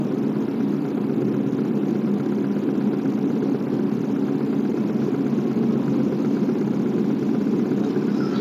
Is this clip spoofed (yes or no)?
no